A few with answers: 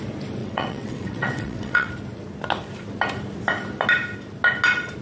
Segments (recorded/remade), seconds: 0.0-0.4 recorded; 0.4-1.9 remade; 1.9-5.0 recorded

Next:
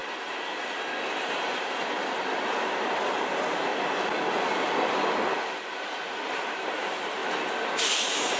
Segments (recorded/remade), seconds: 0.0-3.2 recorded; 3.2-3.7 remade; 3.7-5.8 recorded; 5.8-7.2 remade; 7.2-7.8 recorded; 7.8-8.4 remade

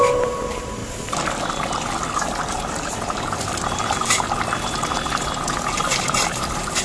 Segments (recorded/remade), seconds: 0.0-0.8 remade; 0.8-2.4 recorded; 2.4-6.8 remade

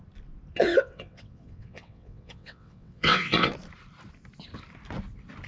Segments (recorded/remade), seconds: 0.0-0.6 recorded; 0.6-3.5 remade; 3.5-5.5 recorded

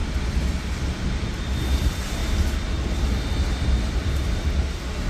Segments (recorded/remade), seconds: 0.0-5.1 recorded

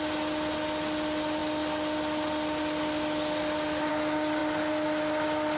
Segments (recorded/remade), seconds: 0.0-5.6 recorded

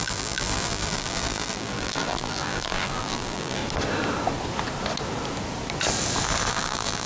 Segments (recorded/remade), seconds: 0.0-3.6 remade; 3.6-6.5 recorded; 6.5-7.1 remade